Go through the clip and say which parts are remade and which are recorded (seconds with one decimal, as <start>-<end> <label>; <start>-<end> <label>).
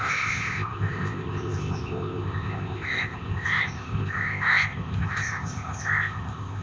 0.0-6.6 remade